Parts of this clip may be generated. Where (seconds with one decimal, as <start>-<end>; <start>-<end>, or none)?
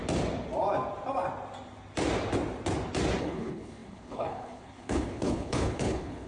3.2-6.3